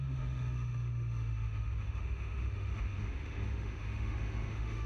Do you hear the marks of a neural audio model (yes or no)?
yes